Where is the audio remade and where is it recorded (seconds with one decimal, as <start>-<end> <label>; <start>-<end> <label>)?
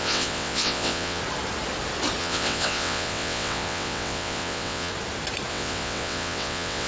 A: 0.0-1.2 remade; 1.2-2.2 recorded; 2.2-4.9 remade; 4.9-5.5 recorded; 5.5-6.9 remade